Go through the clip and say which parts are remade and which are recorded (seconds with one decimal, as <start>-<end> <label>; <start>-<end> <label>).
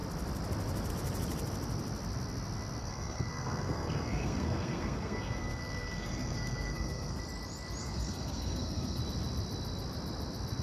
0.0-2.8 recorded; 2.8-7.2 remade; 7.2-7.8 recorded; 7.8-9.0 remade; 9.0-10.6 recorded